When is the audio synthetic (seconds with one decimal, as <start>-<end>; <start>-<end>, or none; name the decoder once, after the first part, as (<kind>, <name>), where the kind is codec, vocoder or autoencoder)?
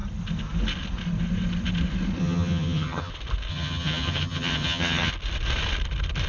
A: 2.2-3.1 (vocoder, HiFi-GAN); 3.5-5.1